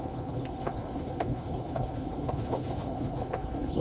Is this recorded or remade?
remade